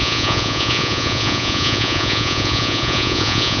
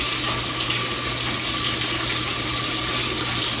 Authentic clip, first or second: second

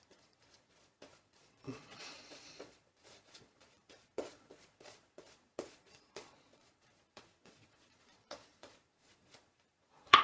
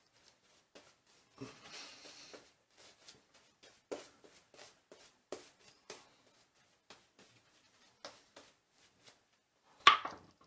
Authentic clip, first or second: second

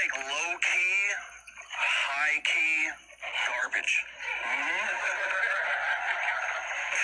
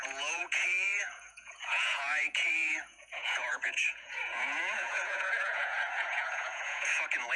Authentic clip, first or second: first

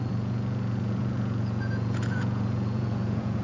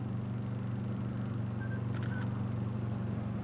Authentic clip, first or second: second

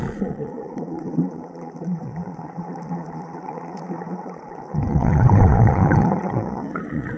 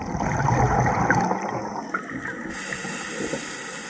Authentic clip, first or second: second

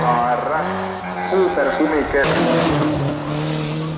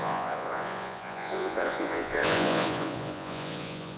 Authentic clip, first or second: first